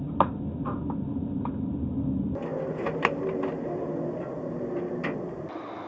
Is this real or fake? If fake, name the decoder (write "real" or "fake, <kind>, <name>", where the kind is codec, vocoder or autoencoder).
real